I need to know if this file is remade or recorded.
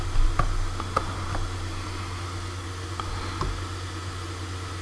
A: recorded